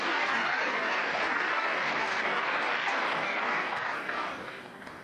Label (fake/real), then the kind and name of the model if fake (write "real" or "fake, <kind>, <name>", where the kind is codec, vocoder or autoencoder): fake, codec, DAC